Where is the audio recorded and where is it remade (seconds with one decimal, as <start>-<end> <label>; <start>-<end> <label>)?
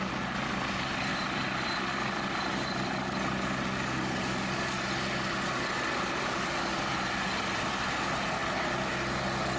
0.0-9.6 recorded